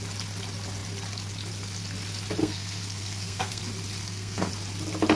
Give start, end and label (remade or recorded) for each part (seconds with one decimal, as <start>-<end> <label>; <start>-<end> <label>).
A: 0.0-2.4 recorded; 2.4-3.6 remade; 3.6-4.0 recorded; 4.0-4.5 remade; 4.5-5.2 recorded